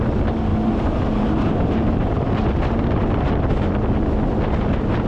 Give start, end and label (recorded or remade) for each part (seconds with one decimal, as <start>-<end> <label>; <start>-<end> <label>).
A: 0.0-0.5 recorded; 0.5-2.3 remade; 2.3-5.1 recorded